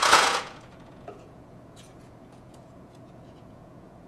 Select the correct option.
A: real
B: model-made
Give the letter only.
B